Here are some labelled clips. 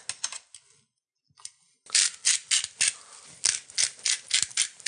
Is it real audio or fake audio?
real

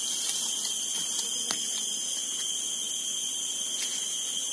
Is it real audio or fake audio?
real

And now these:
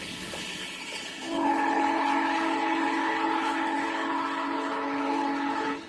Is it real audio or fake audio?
fake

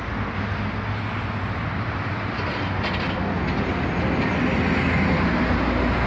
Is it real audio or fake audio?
real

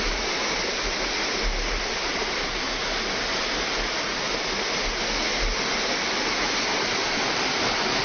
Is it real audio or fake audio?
real